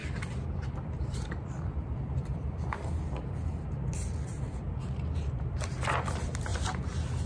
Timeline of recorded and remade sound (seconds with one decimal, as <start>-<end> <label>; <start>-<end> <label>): 0.0-4.4 remade; 4.4-7.3 recorded